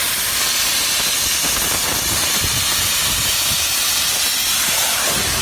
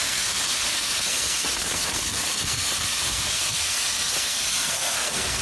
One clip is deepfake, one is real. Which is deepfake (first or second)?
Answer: second